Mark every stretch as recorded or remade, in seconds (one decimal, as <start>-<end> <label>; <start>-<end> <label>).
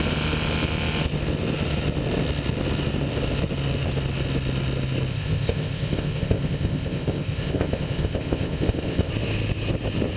0.0-5.1 recorded; 5.1-9.1 remade; 9.1-10.2 recorded